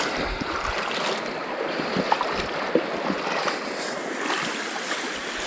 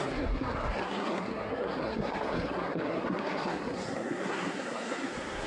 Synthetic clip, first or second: second